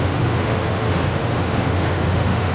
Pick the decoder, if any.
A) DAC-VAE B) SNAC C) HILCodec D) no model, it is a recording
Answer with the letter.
A